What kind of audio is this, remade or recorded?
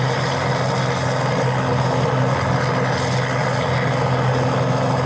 recorded